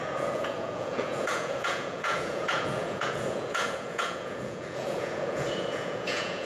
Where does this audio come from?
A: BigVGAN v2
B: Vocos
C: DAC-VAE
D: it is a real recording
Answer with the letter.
B